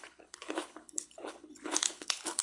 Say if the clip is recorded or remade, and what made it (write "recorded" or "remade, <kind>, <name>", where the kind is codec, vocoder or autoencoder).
remade, codec, HILCodec